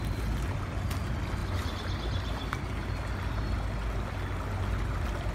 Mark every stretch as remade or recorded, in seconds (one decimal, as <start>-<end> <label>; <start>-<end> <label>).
0.0-5.3 recorded